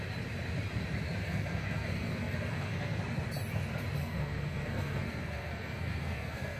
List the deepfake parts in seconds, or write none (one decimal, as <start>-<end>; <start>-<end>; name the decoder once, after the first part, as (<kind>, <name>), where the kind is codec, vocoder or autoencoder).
1.2-3.0 (codec, SNAC); 4.0-6.6